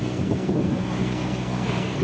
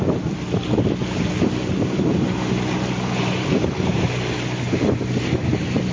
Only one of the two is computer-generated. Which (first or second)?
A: first